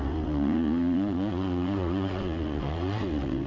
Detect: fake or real fake